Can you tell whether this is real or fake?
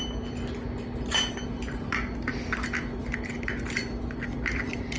real